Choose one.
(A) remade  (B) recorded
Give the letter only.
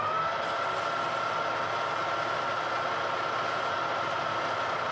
B